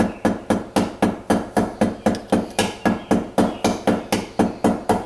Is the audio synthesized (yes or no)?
no